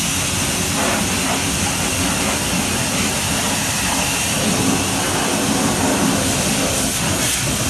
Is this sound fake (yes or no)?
no